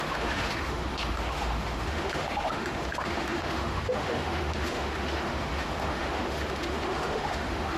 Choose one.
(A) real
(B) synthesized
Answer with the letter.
B